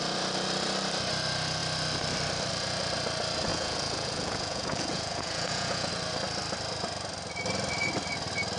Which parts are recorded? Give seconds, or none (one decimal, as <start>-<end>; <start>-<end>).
0.0-3.5; 5.9-8.6